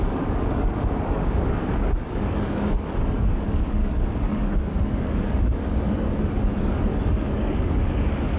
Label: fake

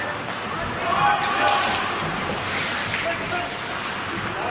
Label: real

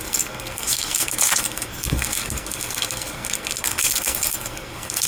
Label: fake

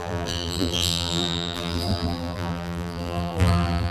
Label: fake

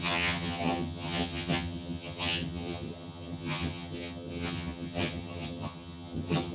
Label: fake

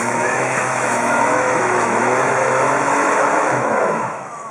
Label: fake